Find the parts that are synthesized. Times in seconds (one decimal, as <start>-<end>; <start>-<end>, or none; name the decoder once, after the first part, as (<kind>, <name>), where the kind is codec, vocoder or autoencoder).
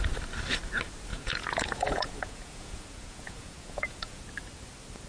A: 1.1-4.2 (vocoder, Vocos)